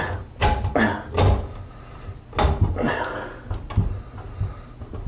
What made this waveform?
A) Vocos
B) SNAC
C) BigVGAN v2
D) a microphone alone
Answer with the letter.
D